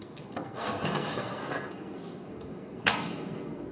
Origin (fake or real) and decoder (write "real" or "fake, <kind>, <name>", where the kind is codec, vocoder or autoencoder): fake, codec, SNAC